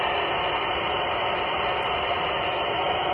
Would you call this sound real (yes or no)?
yes